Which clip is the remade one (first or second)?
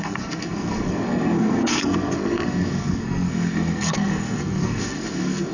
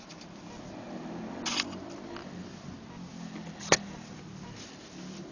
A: first